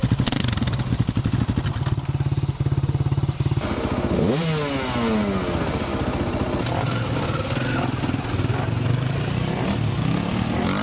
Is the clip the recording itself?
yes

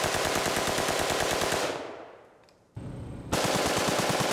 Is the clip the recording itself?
yes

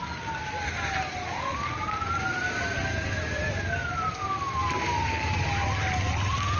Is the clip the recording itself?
yes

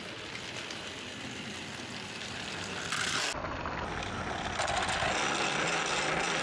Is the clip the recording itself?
yes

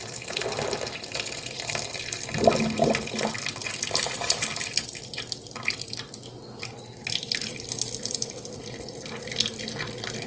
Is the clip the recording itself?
yes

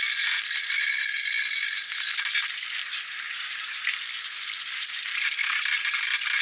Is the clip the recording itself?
yes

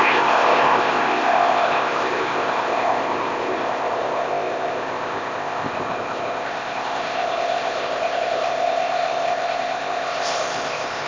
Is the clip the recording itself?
no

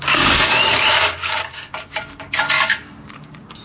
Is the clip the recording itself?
no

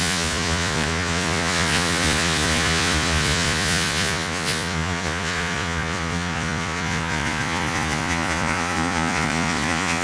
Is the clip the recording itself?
no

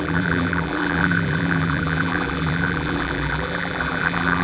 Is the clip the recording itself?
no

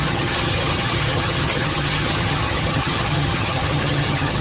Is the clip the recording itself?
no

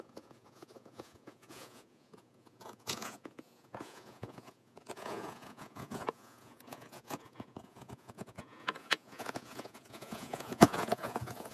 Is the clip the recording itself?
no